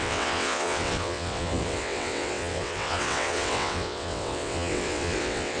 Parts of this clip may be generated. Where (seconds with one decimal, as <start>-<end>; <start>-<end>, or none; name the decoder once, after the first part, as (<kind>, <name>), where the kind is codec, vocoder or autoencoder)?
0.0-5.6 (vocoder, WaveNeXt)